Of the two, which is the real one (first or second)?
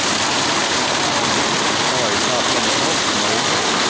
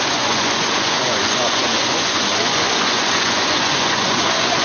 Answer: first